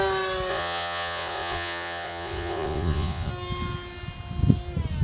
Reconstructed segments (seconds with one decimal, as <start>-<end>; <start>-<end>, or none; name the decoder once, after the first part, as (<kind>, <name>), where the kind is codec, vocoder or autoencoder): 0.5-3.3 (vocoder, Vocos)